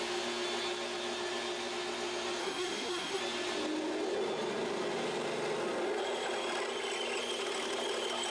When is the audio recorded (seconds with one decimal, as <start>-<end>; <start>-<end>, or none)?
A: 0.0-2.4; 3.2-8.3

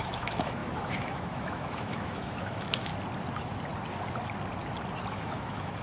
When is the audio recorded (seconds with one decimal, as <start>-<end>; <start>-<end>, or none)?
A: 2.9-5.1